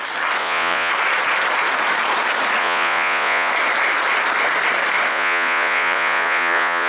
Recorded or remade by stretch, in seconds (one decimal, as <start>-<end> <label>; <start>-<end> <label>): 0.0-0.4 recorded; 0.4-0.9 remade; 0.9-2.6 recorded; 2.6-3.5 remade; 3.5-5.1 recorded; 5.1-6.9 remade